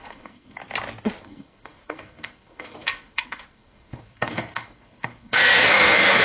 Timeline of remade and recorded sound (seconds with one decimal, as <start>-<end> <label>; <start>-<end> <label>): 0.0-0.6 remade; 0.6-1.2 recorded; 1.2-6.2 remade